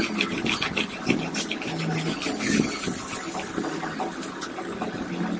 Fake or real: real